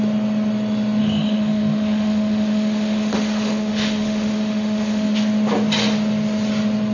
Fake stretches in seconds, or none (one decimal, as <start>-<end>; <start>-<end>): 1.0-5.1